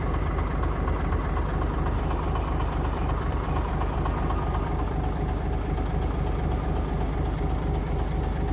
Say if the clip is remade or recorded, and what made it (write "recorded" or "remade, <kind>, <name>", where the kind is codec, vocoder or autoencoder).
recorded